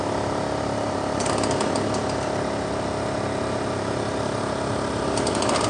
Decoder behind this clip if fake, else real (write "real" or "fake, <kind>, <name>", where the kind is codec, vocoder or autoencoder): real